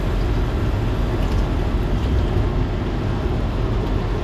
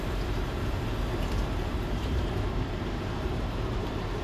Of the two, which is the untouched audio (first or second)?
first